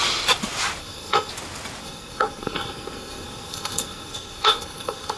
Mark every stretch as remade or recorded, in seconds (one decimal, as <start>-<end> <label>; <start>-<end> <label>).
0.0-0.8 recorded; 0.8-1.3 remade; 1.3-1.8 recorded; 1.8-5.2 remade